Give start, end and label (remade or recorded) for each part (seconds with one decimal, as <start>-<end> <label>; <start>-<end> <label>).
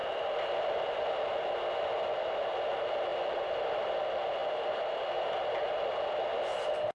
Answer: 0.0-0.8 remade; 0.8-3.1 recorded; 3.1-3.9 remade; 3.9-4.4 recorded; 4.4-4.9 remade; 4.9-6.9 recorded